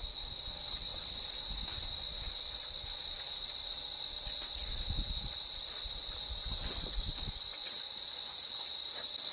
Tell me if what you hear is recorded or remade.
recorded